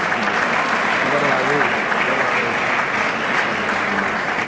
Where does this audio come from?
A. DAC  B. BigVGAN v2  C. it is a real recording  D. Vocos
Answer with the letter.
C